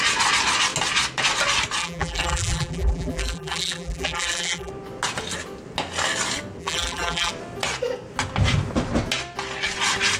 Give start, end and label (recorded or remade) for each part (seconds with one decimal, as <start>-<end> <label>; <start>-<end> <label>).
0.0-1.8 recorded; 1.8-4.7 remade; 4.7-6.6 recorded; 6.6-7.3 remade; 7.3-10.2 recorded